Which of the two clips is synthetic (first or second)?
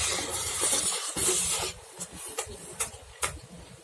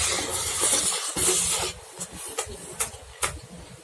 first